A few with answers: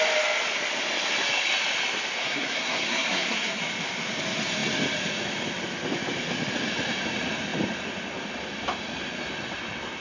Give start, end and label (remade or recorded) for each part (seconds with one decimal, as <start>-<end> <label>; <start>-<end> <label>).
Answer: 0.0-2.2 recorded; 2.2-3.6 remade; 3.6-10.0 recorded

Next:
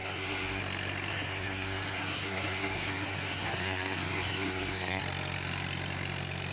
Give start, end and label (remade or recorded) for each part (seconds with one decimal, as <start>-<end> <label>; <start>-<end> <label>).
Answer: 0.0-0.6 remade; 0.6-1.1 recorded; 1.1-5.0 remade; 5.0-6.5 recorded

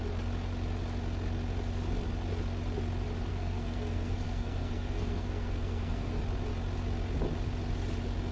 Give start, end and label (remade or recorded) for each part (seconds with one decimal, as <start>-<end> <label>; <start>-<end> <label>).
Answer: 0.0-3.3 recorded; 3.3-6.2 remade; 6.2-8.3 recorded

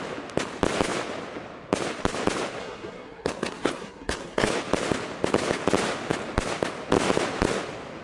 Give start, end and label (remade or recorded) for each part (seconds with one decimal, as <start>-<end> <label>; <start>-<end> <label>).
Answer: 0.0-2.6 recorded; 2.6-4.5 remade; 4.5-8.0 recorded